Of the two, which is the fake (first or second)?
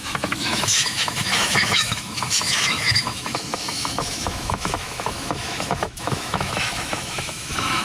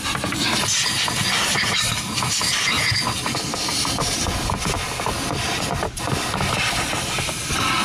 first